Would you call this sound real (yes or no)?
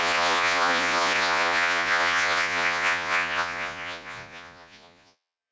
no